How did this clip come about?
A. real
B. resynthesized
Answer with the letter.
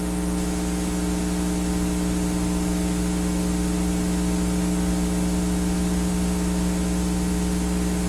A